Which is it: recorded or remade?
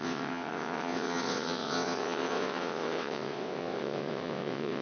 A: remade